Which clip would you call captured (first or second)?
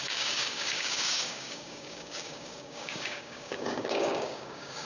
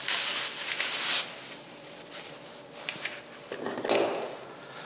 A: second